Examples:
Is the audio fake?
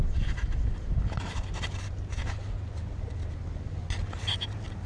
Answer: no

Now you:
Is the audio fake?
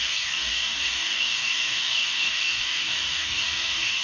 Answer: yes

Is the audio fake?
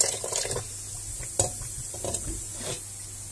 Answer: no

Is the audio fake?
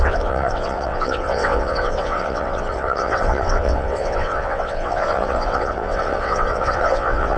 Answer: yes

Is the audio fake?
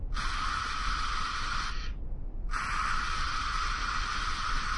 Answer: no